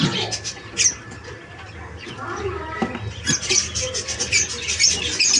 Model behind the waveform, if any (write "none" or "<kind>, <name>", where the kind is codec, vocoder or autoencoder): none